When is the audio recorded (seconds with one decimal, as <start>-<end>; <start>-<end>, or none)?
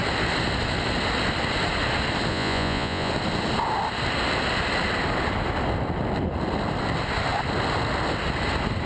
0.0-2.3; 3.1-8.9